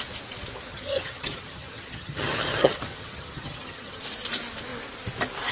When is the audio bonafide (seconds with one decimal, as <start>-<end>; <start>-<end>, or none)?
0.0-0.7; 4.0-5.5